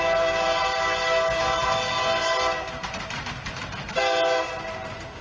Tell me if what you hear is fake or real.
real